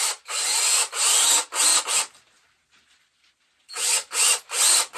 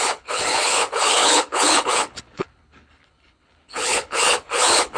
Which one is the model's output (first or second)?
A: second